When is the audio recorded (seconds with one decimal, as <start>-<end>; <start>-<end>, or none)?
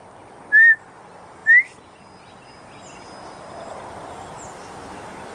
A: 0.0-5.3